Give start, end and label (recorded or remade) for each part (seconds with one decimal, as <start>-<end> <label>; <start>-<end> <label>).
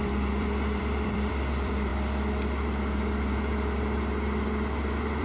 0.0-1.9 remade; 1.9-5.2 recorded